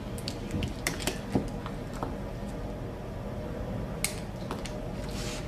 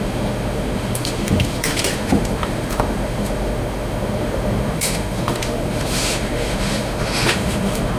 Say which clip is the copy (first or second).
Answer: second